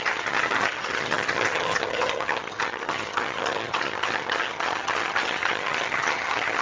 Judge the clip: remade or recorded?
remade